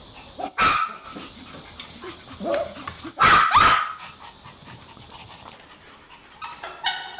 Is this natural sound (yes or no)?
yes